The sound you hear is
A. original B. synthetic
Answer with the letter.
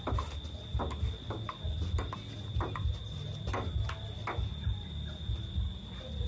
A